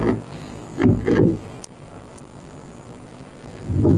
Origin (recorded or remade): remade